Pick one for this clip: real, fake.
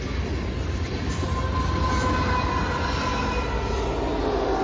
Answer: real